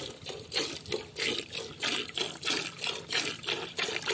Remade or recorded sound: recorded